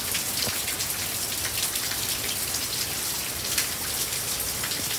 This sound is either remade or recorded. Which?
recorded